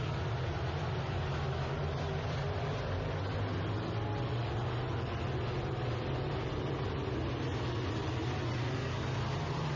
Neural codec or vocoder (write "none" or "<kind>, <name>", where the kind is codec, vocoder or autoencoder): none